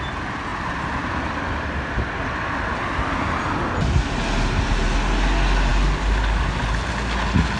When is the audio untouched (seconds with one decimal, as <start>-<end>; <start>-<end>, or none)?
0.0-7.6